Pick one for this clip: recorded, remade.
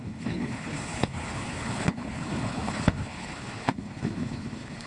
remade